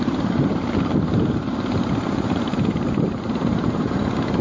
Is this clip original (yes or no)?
no